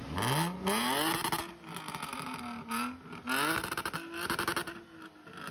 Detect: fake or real real